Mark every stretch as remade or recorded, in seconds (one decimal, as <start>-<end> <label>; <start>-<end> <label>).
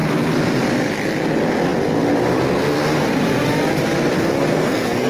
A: 0.0-4.5 recorded; 4.5-5.1 remade